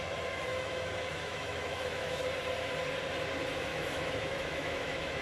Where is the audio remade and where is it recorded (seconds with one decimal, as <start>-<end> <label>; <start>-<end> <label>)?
0.0-0.5 recorded; 0.5-2.2 remade; 2.2-3.7 recorded; 3.7-5.2 remade